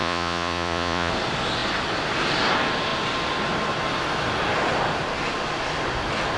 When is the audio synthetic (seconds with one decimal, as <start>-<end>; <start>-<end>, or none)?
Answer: 0.0-1.1